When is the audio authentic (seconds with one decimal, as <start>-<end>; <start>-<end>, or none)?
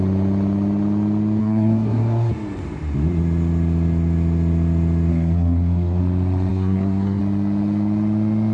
0.0-1.4; 2.3-5.1; 6.0-6.5; 7.2-8.5